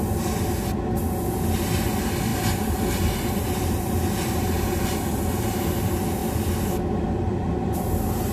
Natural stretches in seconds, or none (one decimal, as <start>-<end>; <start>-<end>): 0.0-2.3; 5.6-6.2; 7.9-8.3